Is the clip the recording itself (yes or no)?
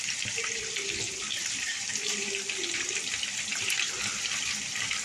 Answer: no